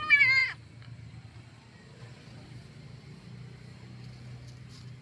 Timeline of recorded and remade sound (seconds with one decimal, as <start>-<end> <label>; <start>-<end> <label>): 0.0-5.0 recorded